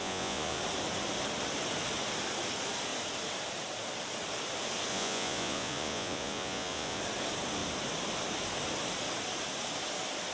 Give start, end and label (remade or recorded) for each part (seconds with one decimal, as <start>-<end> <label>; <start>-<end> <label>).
0.0-0.6 remade; 0.6-4.9 recorded; 4.9-7.0 remade; 7.0-10.3 recorded